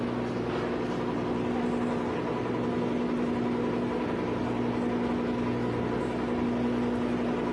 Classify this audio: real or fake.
real